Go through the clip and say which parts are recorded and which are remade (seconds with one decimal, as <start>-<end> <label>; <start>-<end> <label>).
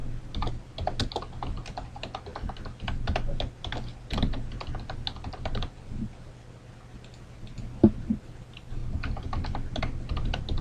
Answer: 0.0-10.6 recorded